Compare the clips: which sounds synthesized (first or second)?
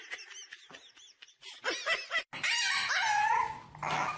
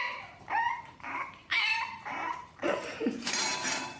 second